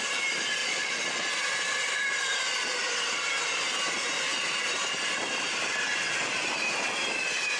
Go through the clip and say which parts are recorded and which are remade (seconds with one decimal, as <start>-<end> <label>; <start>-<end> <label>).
0.0-0.6 recorded; 0.6-1.3 remade; 1.3-7.6 recorded